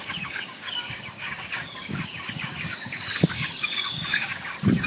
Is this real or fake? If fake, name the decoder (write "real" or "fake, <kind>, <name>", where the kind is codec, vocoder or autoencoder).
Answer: fake, codec, DAC